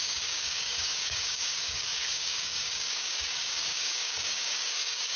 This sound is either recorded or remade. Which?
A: remade